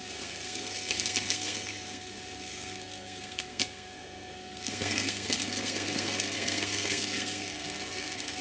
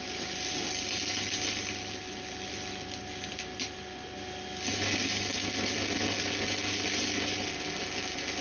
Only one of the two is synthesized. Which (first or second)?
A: first